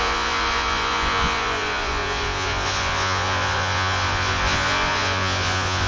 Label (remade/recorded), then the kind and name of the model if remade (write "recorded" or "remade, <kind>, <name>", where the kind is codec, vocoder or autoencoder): remade, vocoder, Vocos